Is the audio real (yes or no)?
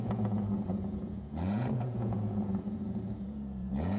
no